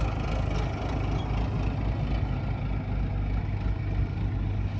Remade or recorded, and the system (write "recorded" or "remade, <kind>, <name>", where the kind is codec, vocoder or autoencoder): recorded